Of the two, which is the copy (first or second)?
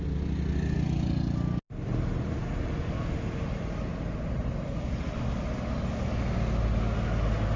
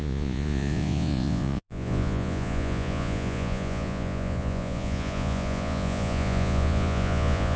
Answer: second